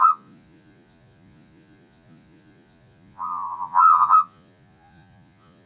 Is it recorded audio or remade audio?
remade